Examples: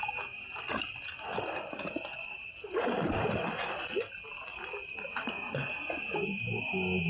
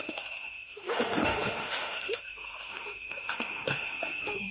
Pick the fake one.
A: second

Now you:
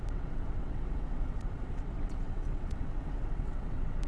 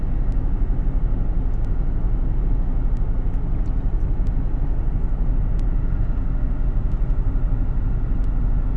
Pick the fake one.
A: first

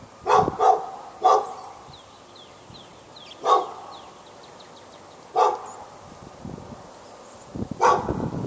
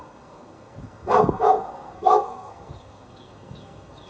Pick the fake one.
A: second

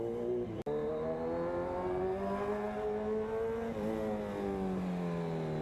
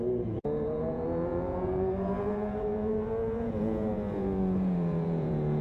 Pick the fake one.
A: second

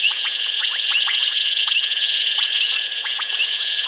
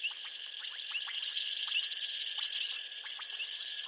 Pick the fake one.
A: first